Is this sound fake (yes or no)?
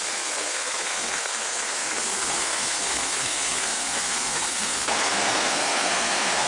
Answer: yes